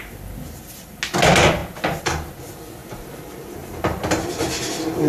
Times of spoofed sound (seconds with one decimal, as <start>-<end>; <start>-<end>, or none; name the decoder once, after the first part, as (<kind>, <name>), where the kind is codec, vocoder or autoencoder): 2.8-4.3 (vocoder, BigVGAN v2)